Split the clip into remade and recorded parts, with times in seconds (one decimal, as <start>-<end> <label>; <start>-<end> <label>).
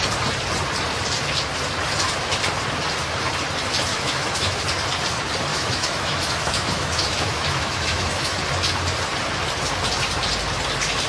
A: 0.0-3.9 recorded; 3.9-4.6 remade; 4.6-5.5 recorded; 5.5-8.4 remade; 8.4-11.1 recorded